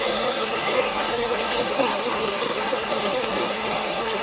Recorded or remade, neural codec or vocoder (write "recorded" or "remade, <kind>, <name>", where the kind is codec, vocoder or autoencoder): remade, codec, SNAC